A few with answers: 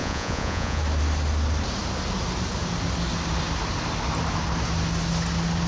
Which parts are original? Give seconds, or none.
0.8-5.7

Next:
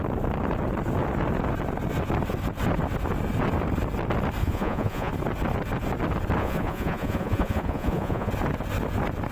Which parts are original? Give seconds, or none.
0.0-4.4; 5.1-6.4; 8.3-9.3

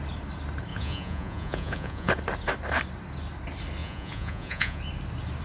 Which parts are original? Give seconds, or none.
0.0-0.7; 2.1-3.8; 4.8-5.4

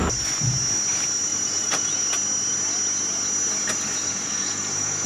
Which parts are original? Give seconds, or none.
0.0-1.3; 2.0-4.0

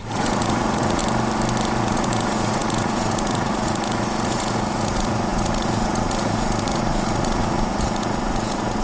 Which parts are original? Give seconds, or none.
1.0-1.8